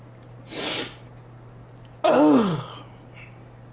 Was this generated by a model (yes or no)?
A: no